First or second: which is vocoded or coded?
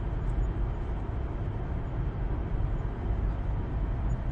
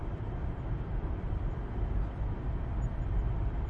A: second